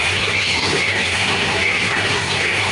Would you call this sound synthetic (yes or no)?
yes